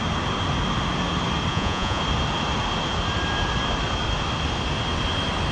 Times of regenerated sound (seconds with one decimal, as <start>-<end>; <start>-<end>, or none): 1.5-2.0